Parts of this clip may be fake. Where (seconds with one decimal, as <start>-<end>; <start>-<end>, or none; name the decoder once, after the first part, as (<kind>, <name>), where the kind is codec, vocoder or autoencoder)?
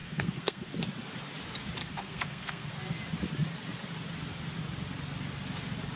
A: 0.0-0.7 (codec, SNAC); 1.8-2.7